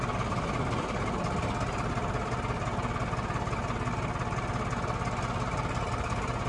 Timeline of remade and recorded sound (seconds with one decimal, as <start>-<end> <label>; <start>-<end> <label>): 0.0-6.5 recorded